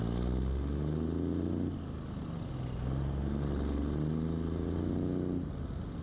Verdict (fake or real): real